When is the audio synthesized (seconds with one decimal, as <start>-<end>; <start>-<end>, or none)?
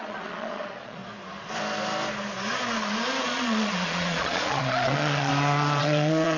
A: 0.0-1.0; 3.2-5.3; 5.8-6.4